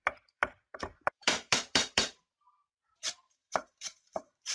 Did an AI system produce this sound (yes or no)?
yes